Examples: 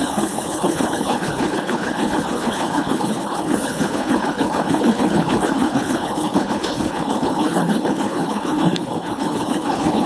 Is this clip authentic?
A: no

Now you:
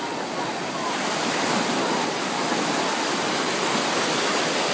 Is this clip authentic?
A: yes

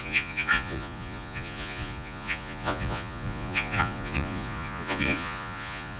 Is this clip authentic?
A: no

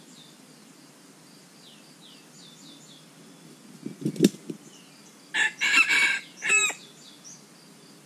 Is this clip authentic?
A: yes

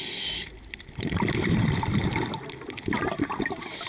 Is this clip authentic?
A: no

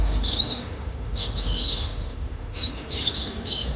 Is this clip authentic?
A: no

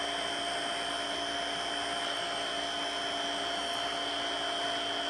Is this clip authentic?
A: yes